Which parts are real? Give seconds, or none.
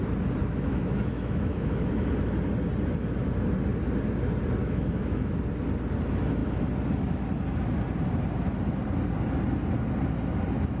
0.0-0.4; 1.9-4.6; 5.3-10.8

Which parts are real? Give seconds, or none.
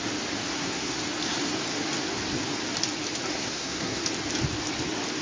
0.0-0.5; 1.0-3.3; 4.0-5.2